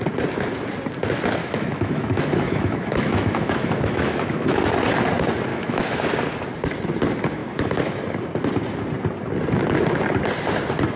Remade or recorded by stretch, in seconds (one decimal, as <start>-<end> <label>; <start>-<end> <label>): 0.0-1.4 recorded; 1.4-4.6 remade; 4.6-5.5 recorded; 5.5-6.0 remade; 6.0-7.4 recorded; 7.4-8.0 remade; 8.0-11.0 recorded

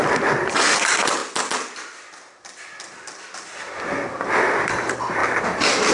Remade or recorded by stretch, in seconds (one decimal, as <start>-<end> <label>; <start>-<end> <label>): 0.0-5.9 recorded

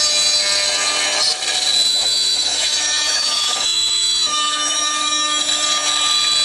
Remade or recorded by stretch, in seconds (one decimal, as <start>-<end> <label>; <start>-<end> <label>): 0.0-1.9 recorded; 1.9-5.4 remade; 5.4-6.4 recorded